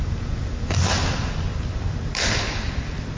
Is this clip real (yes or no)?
yes